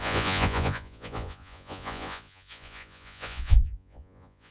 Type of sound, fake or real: fake